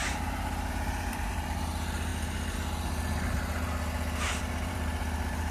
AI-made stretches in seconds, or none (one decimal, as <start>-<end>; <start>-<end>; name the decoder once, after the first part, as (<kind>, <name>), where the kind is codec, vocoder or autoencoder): 0.0-2.1 (vocoder, BigVGAN v2); 4.2-5.5